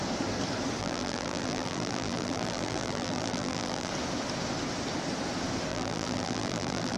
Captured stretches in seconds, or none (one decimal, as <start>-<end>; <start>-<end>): 0.0-0.8; 3.9-5.7